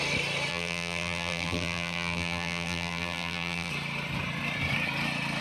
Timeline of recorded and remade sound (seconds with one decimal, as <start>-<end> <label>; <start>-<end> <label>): 0.0-0.5 recorded; 0.5-3.7 remade; 3.7-5.4 recorded